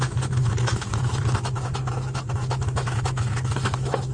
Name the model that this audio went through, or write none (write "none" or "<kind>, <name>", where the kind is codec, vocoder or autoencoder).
autoencoder, DAC-VAE